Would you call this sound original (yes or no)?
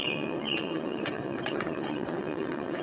no